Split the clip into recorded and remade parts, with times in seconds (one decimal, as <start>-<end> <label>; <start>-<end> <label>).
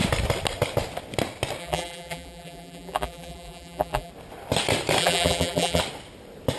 0.0-1.6 recorded; 1.6-4.1 remade; 4.1-5.0 recorded; 5.0-5.8 remade; 5.8-6.6 recorded